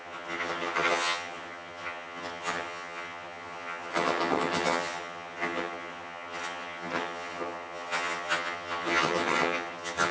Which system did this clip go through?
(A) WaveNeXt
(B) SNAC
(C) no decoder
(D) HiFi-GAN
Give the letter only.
D